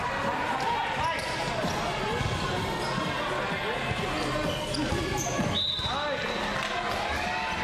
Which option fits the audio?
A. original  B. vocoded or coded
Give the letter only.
A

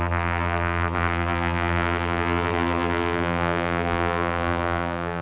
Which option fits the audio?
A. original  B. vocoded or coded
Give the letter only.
B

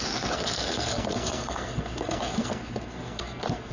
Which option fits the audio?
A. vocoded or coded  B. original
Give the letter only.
A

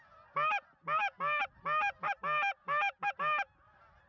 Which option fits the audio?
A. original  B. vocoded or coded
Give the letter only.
A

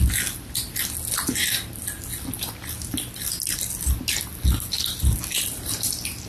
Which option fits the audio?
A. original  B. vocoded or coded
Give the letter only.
A